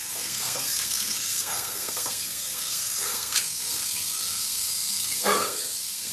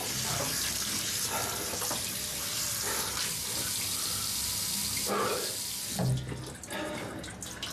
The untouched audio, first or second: second